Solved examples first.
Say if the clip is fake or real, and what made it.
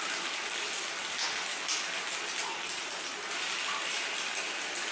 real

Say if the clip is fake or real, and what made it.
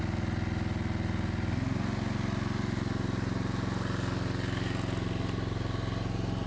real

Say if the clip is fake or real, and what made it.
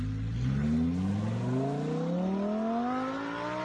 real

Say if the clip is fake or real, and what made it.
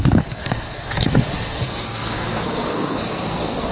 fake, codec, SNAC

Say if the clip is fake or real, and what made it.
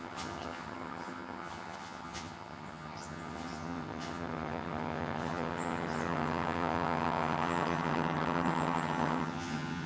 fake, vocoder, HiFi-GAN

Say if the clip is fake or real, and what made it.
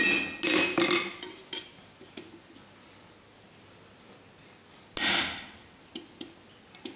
real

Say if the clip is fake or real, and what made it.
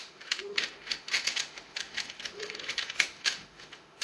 fake, autoencoder, DAC-VAE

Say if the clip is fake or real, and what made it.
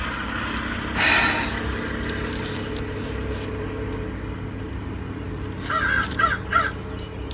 real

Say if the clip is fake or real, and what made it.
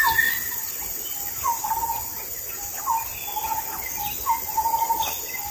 real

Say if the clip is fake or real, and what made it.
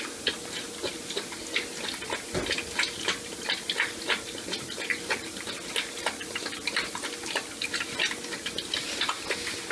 real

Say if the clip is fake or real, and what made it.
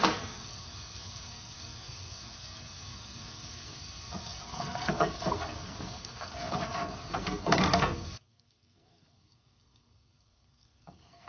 fake, codec, SNAC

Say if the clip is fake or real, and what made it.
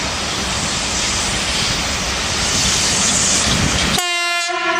real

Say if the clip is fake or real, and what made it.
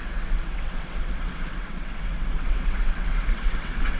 fake, vocoder, WaveNeXt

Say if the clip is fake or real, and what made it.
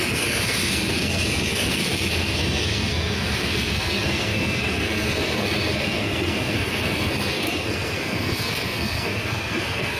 fake, codec, SNAC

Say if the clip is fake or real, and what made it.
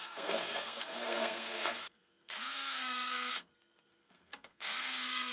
fake, codec, SNAC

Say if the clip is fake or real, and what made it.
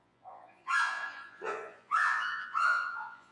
fake, vocoder, Vocos